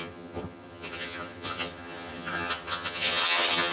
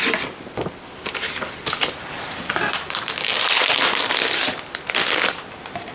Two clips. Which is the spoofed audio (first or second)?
first